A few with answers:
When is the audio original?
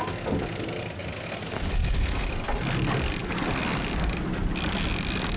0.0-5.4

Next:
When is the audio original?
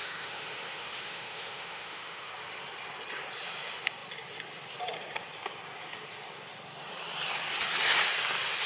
2.3-8.7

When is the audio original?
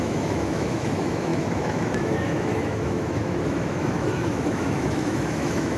none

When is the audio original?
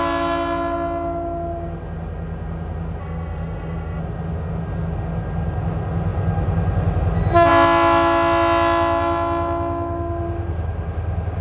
0.0-3.0; 4.0-11.4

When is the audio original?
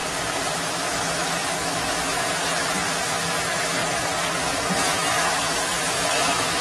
0.0-0.5; 3.8-4.4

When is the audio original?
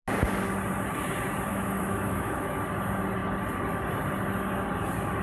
0.0-1.5; 2.6-5.2